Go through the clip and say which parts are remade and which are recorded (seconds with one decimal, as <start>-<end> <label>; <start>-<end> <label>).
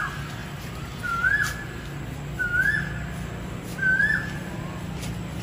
0.0-5.4 recorded